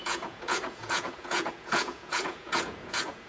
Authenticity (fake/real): fake